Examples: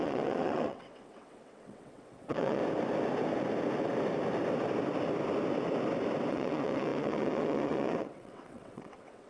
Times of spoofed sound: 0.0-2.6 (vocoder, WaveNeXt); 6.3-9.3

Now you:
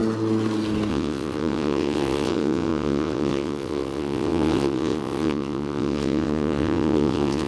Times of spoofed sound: 0.9-7.5 (vocoder, WaveNeXt)

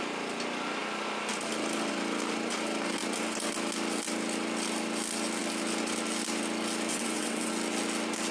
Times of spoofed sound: 6.9-7.5 (vocoder, WaveNeXt)

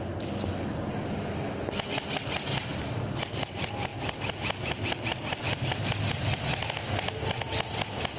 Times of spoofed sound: none

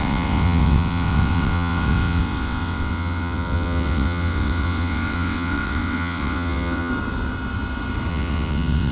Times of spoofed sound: 0.0-6.9 (vocoder, WaveNeXt); 8.1-8.9